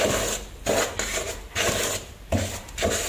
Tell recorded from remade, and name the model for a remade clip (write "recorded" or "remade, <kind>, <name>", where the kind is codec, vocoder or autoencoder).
recorded